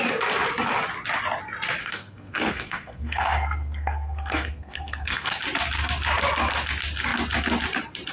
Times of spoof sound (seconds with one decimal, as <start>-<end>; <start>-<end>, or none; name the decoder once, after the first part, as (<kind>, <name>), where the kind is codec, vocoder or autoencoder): 1.8-5.4 (codec, SNAC)